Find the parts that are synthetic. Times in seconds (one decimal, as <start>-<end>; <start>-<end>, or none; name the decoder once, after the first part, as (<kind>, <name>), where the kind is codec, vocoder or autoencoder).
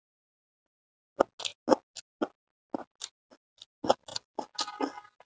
none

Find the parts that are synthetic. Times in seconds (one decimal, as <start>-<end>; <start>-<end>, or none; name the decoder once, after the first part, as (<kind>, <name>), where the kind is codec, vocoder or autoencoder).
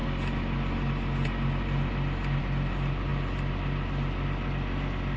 none